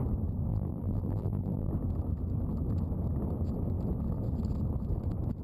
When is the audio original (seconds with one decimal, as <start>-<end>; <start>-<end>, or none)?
0.0-0.5; 1.7-5.4